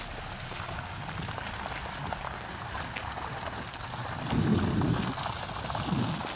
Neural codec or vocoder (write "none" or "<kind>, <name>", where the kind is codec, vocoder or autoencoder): none